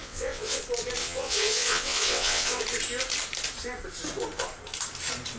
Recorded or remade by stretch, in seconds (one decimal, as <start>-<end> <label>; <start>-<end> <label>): 0.0-0.6 remade; 0.6-1.0 recorded; 1.0-2.6 remade; 2.6-5.4 recorded